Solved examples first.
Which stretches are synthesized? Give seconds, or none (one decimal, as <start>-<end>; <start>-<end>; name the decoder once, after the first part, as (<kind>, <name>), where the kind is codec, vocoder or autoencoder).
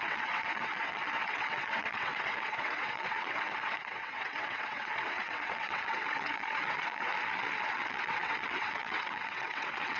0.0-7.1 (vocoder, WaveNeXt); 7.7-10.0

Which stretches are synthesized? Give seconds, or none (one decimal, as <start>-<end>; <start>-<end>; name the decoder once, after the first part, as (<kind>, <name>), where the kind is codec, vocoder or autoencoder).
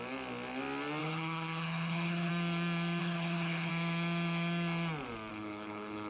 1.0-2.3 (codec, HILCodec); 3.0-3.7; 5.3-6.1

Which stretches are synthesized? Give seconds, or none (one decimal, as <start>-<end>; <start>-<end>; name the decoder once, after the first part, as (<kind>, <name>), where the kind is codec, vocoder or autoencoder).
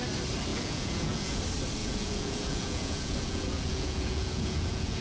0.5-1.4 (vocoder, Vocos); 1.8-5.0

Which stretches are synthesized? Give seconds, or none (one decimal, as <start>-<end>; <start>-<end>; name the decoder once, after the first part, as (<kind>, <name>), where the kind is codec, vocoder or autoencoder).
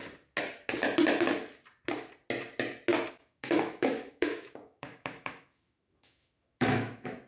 3.1-7.3 (autoencoder, DAC-VAE)